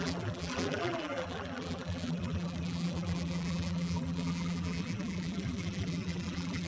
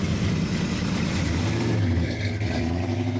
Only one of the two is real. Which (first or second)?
second